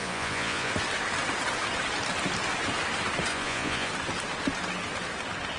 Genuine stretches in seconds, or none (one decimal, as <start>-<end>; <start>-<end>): 0.7-3.3; 3.9-5.6